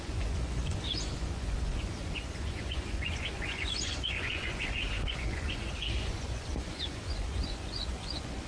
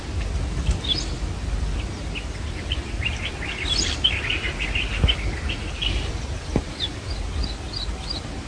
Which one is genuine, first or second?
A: second